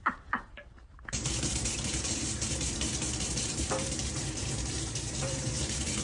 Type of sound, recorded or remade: remade